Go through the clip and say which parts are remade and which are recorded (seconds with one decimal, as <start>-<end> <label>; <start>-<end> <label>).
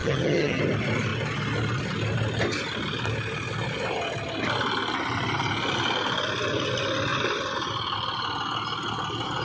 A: 0.0-0.6 remade; 0.6-9.4 recorded